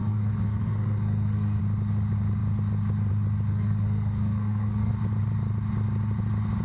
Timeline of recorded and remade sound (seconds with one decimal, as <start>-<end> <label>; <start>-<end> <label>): 0.0-1.6 remade; 1.6-3.5 recorded; 3.5-4.9 remade; 4.9-6.6 recorded